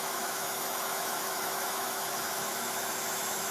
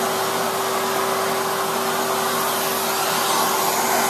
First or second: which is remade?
first